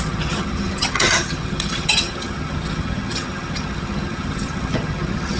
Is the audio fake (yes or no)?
yes